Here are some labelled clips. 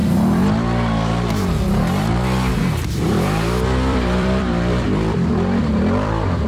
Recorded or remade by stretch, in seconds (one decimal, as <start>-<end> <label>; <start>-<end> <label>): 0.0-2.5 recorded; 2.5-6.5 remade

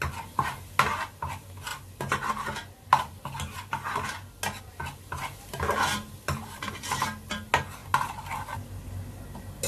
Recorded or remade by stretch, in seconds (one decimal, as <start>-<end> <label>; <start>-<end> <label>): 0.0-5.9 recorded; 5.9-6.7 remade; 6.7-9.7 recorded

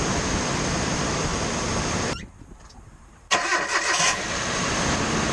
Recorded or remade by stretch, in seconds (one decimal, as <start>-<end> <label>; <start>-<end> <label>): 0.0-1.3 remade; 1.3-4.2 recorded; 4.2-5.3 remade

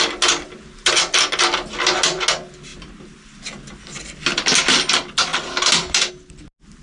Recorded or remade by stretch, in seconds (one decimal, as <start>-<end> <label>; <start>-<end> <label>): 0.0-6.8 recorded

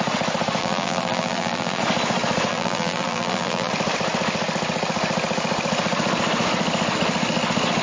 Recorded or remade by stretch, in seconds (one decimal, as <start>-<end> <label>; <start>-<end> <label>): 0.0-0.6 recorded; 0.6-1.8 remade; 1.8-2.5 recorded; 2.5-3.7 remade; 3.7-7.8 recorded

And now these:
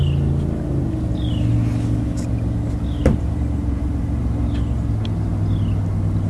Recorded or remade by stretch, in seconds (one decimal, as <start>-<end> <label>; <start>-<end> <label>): 0.0-3.0 recorded; 3.0-4.2 remade; 4.2-6.3 recorded

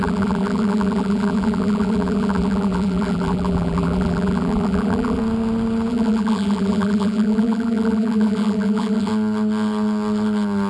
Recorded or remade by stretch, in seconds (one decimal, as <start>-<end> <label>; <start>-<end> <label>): 0.0-5.2 remade; 5.2-5.9 recorded; 5.9-9.1 remade; 9.1-10.7 recorded

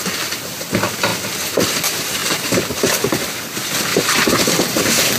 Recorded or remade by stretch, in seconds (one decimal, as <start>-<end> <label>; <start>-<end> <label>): 0.0-1.1 recorded; 1.1-1.8 remade; 1.8-3.9 recorded; 3.9-4.6 remade; 4.6-5.2 recorded